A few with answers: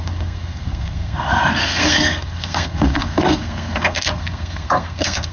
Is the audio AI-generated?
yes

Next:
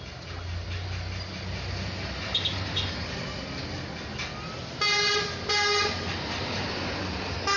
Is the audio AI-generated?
no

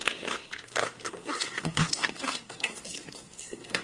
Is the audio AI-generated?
yes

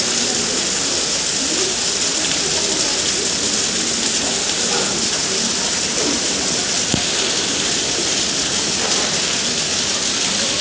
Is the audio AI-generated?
no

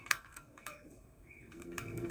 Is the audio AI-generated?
yes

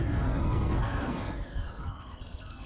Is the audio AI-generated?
yes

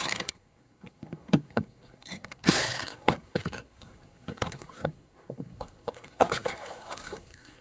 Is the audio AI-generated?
yes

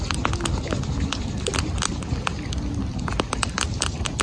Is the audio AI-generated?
no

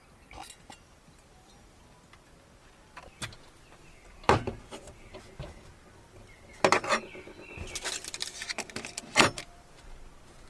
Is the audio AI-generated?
no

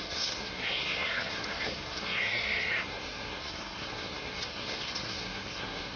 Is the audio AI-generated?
yes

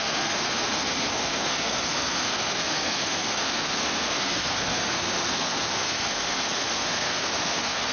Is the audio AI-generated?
yes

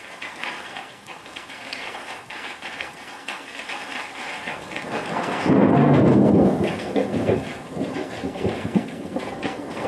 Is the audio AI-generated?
yes